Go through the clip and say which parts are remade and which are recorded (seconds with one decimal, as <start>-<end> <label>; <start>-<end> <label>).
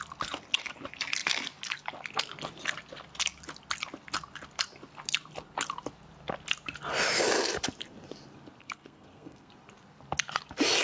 0.0-8.6 recorded; 8.6-9.5 remade; 9.5-10.8 recorded